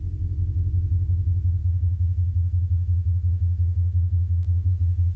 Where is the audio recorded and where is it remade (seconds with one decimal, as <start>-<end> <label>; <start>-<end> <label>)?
0.0-1.6 recorded; 1.6-4.7 remade; 4.7-5.2 recorded